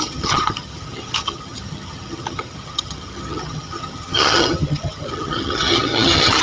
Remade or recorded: remade